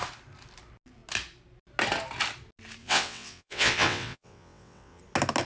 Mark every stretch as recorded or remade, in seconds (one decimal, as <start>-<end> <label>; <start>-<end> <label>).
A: 0.0-2.8 recorded; 2.8-5.0 remade; 5.0-5.4 recorded